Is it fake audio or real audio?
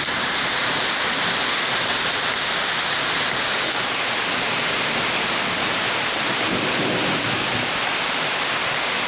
real